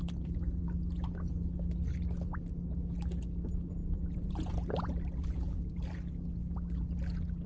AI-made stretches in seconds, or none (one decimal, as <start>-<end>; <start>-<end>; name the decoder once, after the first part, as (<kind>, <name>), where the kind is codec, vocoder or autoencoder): 3.8-4.5 (vocoder, Vocos)